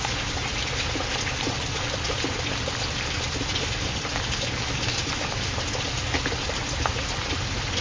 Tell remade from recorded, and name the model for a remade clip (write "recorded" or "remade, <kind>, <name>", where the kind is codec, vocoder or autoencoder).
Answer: recorded